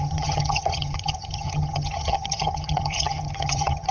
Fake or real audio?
fake